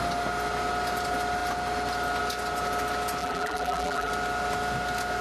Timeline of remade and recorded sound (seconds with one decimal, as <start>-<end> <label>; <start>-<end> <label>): 0.0-3.2 recorded; 3.2-4.1 remade; 4.1-5.2 recorded